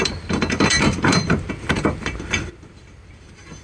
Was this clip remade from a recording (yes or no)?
yes